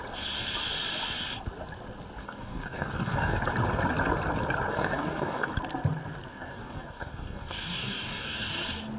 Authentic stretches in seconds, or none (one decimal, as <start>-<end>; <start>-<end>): 0.0-2.2; 3.4-4.7; 5.5-6.3; 8.5-9.0